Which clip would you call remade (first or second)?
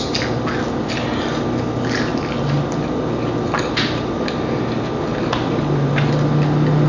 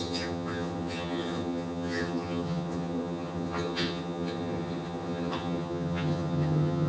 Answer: second